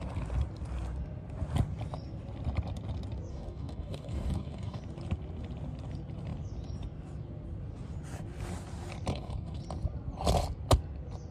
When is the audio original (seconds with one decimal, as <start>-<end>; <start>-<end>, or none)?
0.0-3.3; 4.8-9.1; 9.6-11.3